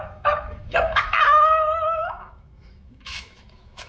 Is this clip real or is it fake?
fake